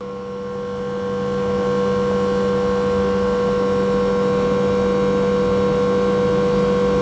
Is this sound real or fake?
real